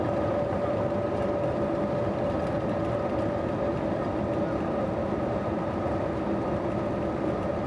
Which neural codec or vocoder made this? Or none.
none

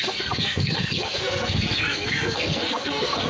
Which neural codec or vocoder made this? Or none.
codec, SNAC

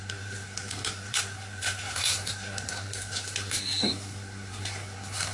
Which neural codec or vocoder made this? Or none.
codec, SNAC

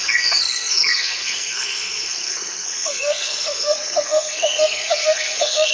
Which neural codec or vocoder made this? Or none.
codec, SNAC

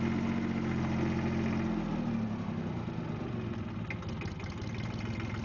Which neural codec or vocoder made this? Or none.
none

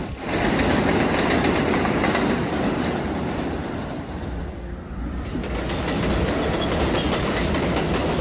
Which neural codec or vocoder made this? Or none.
none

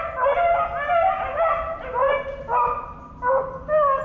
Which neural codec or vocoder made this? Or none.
none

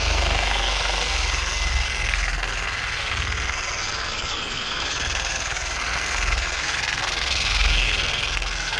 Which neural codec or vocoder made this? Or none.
codec, SNAC